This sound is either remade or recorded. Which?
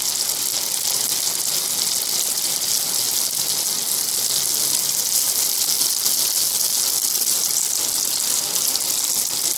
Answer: recorded